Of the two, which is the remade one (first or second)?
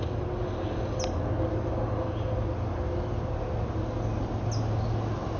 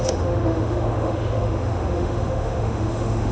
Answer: second